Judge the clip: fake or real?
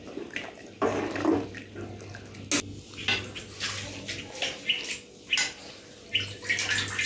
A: real